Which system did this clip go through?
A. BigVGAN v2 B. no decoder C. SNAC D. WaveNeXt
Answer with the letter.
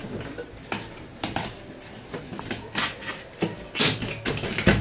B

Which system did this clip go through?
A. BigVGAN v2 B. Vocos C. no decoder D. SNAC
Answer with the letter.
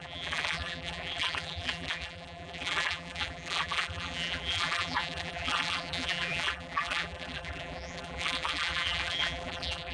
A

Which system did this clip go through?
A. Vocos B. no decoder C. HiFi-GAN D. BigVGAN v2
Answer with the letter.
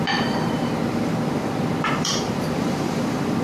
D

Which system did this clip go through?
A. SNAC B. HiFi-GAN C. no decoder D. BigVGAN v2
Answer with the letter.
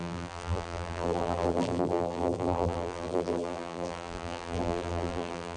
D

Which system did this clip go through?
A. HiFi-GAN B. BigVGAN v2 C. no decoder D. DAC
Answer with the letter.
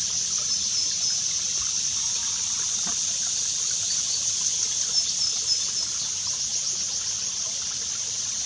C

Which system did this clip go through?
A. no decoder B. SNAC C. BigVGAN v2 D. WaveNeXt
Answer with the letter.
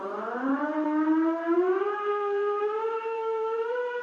C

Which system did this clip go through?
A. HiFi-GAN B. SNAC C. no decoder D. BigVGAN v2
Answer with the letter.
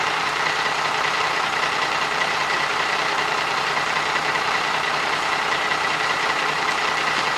D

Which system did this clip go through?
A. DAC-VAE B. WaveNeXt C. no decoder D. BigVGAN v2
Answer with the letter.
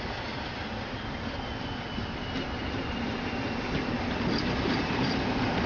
D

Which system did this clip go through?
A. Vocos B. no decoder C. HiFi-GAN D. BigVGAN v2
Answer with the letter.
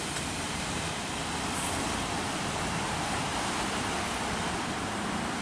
D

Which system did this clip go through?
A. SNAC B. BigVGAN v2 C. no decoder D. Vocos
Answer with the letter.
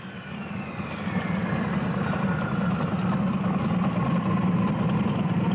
C